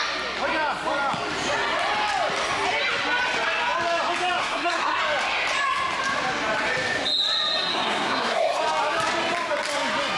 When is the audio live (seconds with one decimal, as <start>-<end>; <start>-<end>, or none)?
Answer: 0.0-4.4; 5.0-7.7; 8.6-10.2

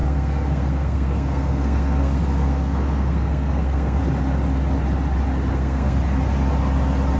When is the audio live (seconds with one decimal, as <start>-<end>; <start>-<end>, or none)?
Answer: 4.0-5.5; 6.0-7.2